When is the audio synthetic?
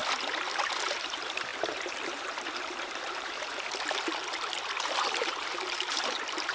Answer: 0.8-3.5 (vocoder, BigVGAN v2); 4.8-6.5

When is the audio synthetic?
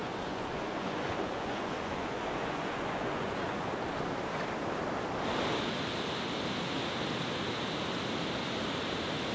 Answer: 0.0-3.7 (vocoder, Vocos)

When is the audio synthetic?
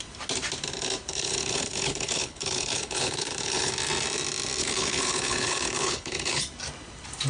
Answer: 1.1-3.7 (codec, HILCodec); 4.6-6.4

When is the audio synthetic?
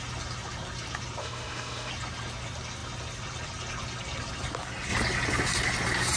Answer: 1.2-1.9 (autoencoder, DAC-VAE)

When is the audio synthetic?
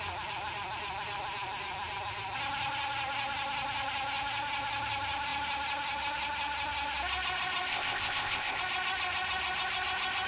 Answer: 7.7-8.6 (codec, ZipCodec)